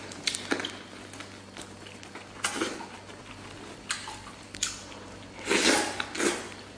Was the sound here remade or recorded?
recorded